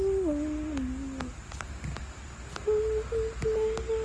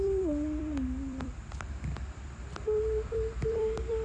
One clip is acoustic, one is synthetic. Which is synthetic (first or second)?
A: second